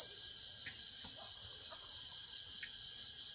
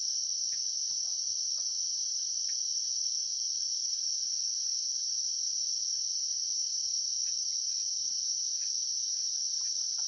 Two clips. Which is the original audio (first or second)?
first